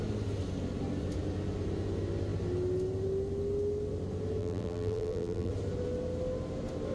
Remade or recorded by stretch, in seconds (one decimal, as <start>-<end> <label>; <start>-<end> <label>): 0.0-4.4 recorded; 4.4-5.5 remade; 5.5-6.9 recorded